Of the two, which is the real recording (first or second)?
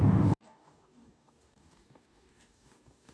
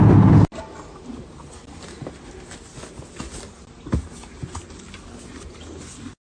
second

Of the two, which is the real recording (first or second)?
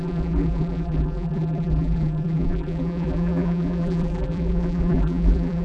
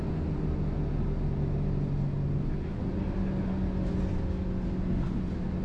second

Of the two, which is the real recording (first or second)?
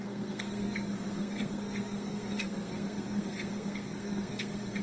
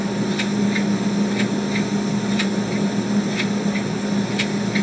second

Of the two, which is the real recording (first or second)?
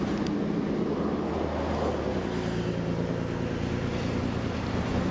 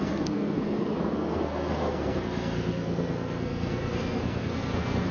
first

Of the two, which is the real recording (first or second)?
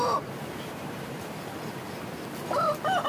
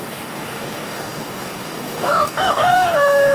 first